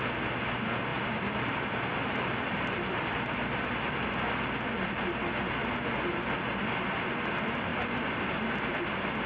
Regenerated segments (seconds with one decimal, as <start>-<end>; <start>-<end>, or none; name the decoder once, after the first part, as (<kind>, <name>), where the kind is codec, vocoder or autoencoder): 0.9-4.9 (vocoder, BigVGAN v2); 7.7-8.7